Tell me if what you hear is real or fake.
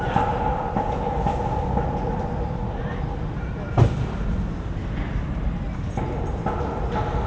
real